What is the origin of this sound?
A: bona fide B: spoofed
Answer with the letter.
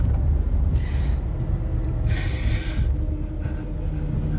A